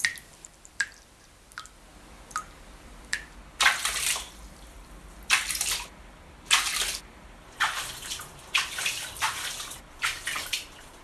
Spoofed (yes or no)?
yes